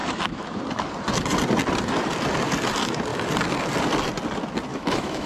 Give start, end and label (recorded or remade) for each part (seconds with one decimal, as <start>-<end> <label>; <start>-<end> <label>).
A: 0.0-0.6 remade; 0.6-4.7 recorded; 4.7-5.3 remade